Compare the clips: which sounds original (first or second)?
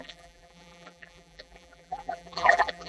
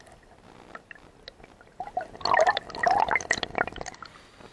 second